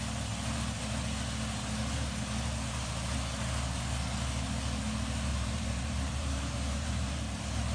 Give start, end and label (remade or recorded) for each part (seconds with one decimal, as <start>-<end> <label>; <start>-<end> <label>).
0.0-5.3 recorded; 5.3-7.1 remade; 7.1-7.7 recorded